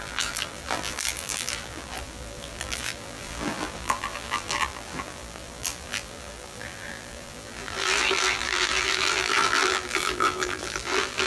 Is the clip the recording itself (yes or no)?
no